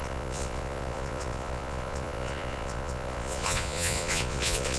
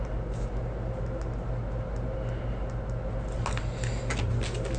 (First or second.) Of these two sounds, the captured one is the second